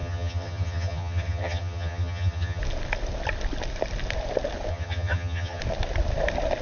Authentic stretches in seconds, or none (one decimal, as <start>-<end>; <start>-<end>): 2.6-4.7; 5.6-6.6